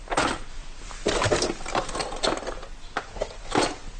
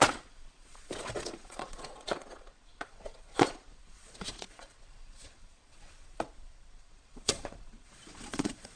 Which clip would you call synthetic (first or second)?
second